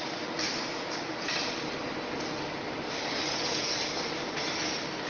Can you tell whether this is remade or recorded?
recorded